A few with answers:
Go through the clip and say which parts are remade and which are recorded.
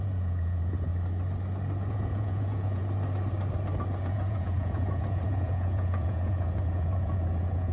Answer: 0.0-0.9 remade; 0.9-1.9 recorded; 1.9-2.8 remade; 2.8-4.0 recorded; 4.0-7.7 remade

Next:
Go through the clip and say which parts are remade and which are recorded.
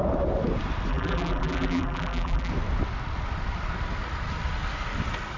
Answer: 0.0-0.9 recorded; 0.9-2.5 remade; 2.5-5.4 recorded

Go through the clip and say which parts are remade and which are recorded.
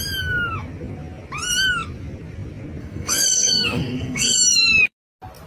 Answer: 0.0-2.8 recorded; 2.8-4.4 remade; 4.4-5.5 recorded